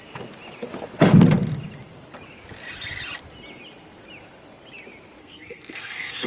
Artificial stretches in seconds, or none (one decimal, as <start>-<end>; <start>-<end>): 5.2-6.3